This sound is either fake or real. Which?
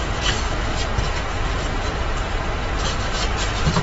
fake